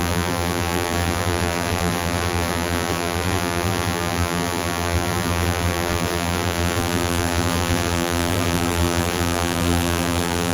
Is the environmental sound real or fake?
fake